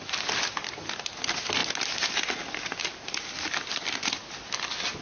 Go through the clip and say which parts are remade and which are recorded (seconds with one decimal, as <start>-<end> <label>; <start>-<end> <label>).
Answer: 0.0-5.0 recorded